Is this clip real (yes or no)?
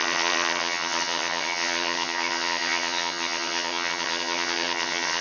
no